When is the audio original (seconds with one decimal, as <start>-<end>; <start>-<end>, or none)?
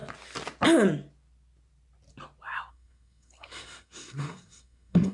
0.0-2.7